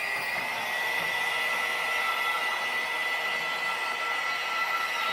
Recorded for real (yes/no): yes